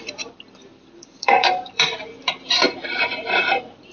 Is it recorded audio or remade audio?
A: remade